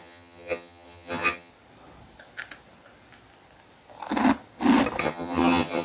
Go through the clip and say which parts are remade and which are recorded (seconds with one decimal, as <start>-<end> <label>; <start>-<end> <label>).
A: 0.0-1.5 remade; 1.5-5.0 recorded; 5.0-5.8 remade